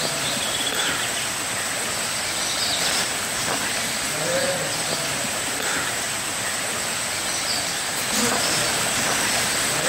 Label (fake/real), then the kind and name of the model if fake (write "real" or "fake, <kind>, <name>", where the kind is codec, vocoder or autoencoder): real